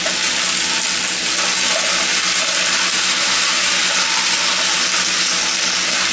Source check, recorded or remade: recorded